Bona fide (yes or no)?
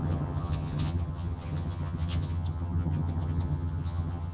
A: no